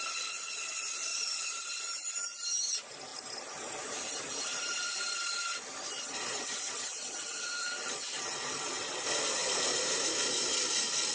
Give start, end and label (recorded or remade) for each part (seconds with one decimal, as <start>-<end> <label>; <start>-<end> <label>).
0.0-1.1 recorded; 1.1-1.8 remade; 1.8-3.1 recorded; 3.1-7.9 remade; 7.9-9.4 recorded; 9.4-10.1 remade; 10.1-11.1 recorded